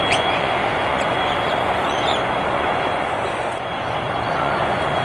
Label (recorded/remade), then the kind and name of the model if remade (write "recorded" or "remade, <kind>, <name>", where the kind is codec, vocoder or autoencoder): remade, vocoder, Vocos